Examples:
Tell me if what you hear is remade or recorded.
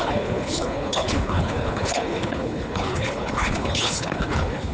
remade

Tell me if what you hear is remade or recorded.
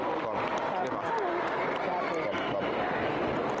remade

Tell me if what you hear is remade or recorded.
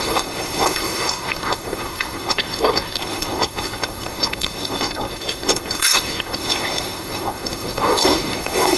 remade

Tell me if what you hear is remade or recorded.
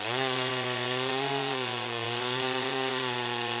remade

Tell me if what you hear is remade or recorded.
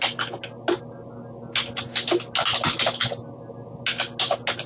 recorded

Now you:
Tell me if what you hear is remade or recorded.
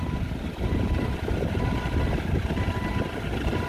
recorded